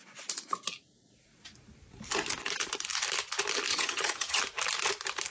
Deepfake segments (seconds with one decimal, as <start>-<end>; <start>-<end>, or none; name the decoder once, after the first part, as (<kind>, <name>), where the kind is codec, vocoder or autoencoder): 3.7-4.4 (vocoder, HiFi-GAN)